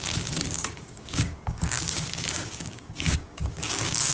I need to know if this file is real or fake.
fake